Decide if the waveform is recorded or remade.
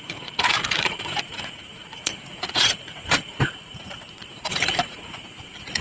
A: remade